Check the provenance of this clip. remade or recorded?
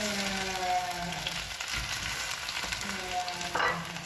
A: recorded